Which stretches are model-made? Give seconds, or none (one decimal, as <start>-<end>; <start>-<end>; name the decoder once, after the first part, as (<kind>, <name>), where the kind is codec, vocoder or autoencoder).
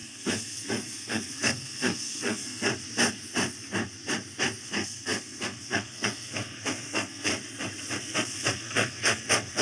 0.0-2.7 (codec, SNAC); 4.6-7.3; 8.0-9.6